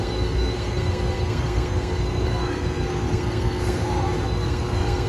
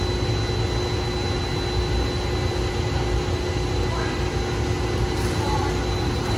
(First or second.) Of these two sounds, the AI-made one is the first